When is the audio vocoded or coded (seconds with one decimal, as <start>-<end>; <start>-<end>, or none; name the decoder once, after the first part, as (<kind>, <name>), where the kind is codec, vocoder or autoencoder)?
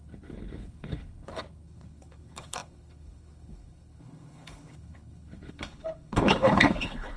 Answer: 0.0-7.2 (codec, HILCodec)